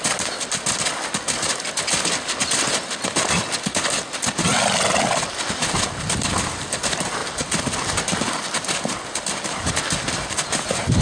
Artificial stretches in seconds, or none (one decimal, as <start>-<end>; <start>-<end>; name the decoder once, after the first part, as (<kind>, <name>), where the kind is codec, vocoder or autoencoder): none